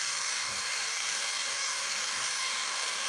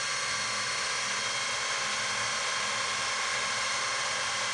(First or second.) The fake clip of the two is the first